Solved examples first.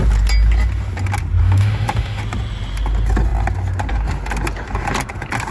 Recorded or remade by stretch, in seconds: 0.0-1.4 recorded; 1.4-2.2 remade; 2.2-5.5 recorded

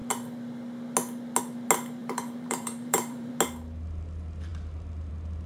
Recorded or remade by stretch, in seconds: 0.0-2.0 recorded; 2.0-3.3 remade; 3.3-5.5 recorded

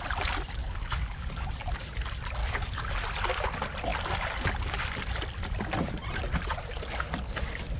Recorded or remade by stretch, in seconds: 0.0-0.6 recorded; 0.6-1.5 remade; 1.5-2.4 recorded; 2.4-3.0 remade; 3.0-7.8 recorded